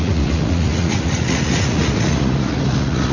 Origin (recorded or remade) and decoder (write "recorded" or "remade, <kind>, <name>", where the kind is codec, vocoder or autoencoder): remade, vocoder, Vocos